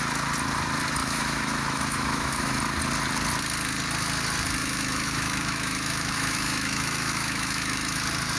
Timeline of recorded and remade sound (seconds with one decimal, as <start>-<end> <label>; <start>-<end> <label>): 0.0-1.0 recorded; 1.0-2.6 remade; 2.6-4.6 recorded; 4.6-8.0 remade; 8.0-8.4 recorded